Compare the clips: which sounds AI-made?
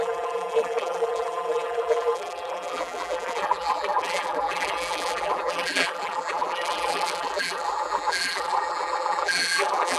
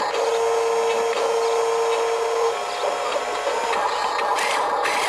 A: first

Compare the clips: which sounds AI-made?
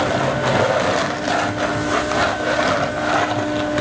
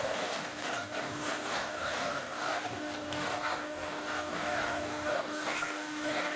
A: second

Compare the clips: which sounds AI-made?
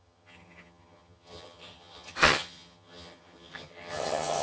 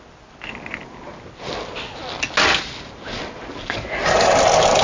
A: first